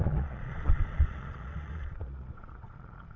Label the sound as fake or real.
fake